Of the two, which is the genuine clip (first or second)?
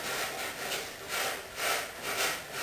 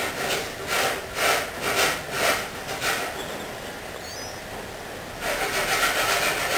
second